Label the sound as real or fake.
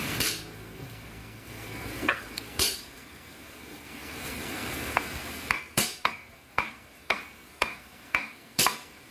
fake